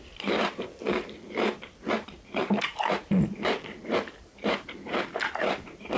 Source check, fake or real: fake